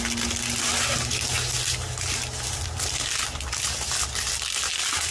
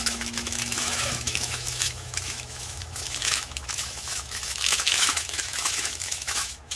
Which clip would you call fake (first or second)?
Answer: second